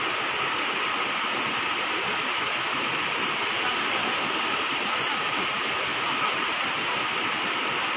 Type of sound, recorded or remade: recorded